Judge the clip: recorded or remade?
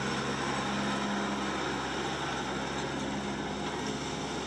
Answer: recorded